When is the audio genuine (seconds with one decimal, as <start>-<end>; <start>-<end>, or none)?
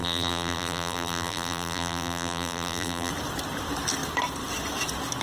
3.1-5.2